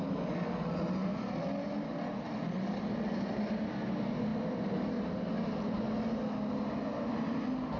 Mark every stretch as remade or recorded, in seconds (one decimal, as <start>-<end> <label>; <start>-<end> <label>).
0.0-7.8 recorded